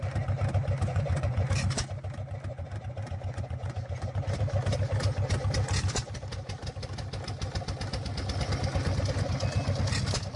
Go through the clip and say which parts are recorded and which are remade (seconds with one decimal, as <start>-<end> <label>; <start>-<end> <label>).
0.0-0.9 recorded; 0.9-1.5 remade; 1.5-2.5 recorded; 2.5-4.2 remade; 4.2-10.4 recorded